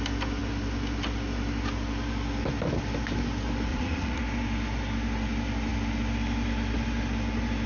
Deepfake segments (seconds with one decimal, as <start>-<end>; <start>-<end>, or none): 3.7-4.2